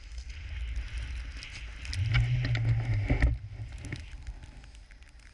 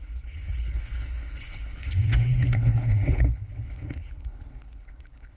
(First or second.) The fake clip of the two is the second